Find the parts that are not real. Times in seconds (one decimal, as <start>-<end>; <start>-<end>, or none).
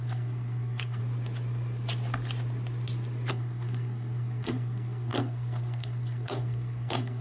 0.0-1.0; 3.3-7.2